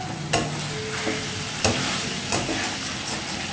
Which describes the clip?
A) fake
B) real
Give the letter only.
B